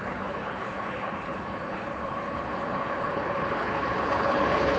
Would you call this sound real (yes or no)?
no